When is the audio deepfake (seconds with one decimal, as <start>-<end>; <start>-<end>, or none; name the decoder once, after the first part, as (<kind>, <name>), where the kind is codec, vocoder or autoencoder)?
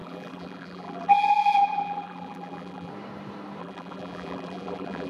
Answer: 0.0-2.9 (vocoder, BigVGAN v2); 3.6-5.1